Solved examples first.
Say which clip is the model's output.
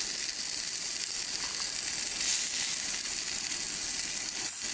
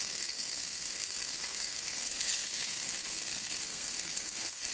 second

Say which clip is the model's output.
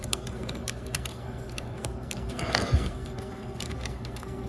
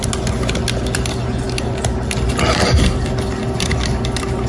first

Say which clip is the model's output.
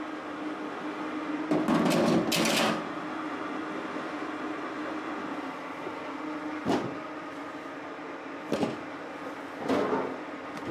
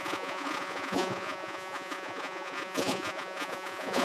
second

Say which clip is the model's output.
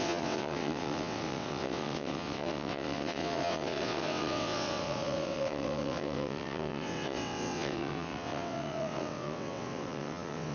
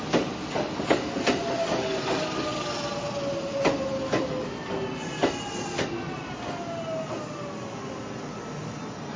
first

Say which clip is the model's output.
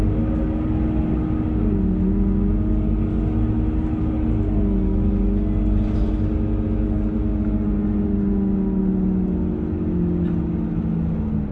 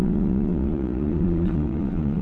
second